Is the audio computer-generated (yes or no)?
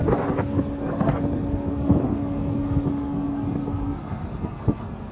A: yes